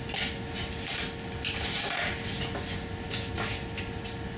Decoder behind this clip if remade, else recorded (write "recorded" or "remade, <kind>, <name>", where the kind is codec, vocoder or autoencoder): recorded